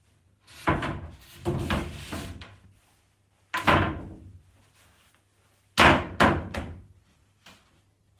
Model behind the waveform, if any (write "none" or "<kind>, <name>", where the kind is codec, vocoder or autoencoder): none